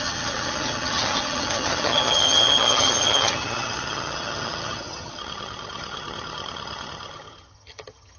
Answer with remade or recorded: remade